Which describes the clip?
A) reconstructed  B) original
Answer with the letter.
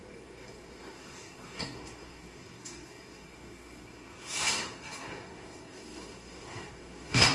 A